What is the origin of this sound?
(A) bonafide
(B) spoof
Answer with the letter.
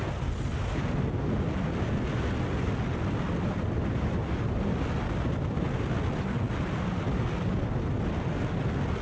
A